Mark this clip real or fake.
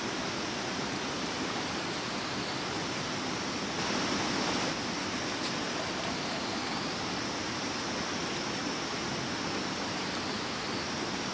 real